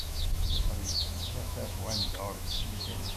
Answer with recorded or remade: remade